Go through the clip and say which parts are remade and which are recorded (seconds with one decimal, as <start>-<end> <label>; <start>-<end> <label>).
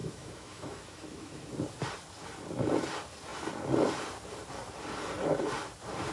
0.0-1.5 remade; 1.5-6.1 recorded